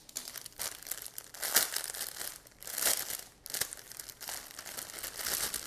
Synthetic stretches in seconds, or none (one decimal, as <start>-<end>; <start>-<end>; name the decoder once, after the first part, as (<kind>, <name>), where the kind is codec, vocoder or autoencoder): none